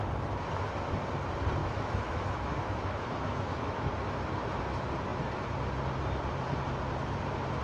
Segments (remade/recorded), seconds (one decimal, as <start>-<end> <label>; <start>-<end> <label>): 0.0-1.6 recorded; 1.6-3.9 remade; 3.9-7.6 recorded